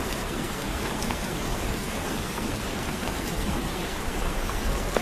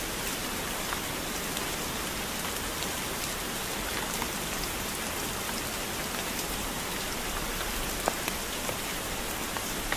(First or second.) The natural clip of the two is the second